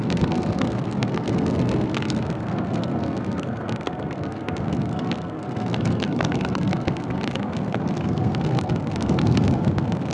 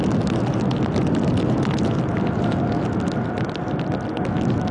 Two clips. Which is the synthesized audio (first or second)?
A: first